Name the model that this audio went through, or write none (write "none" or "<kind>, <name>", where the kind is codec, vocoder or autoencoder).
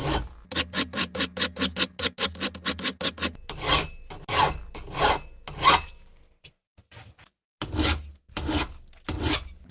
none